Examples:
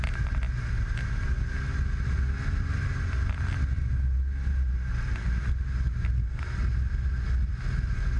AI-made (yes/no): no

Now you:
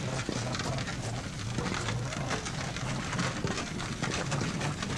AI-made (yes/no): no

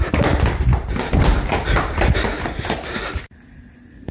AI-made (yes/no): no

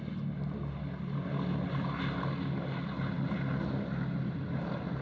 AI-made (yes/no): no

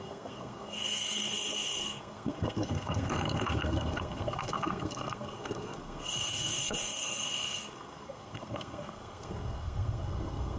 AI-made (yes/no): yes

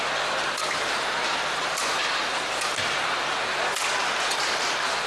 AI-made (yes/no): no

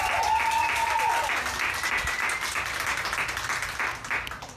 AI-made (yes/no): no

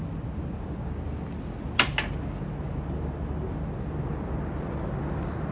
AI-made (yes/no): no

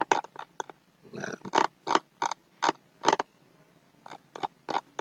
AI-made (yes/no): no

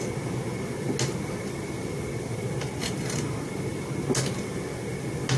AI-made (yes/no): no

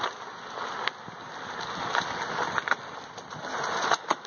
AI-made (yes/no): no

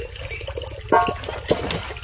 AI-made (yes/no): no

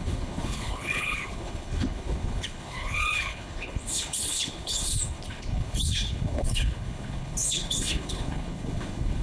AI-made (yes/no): yes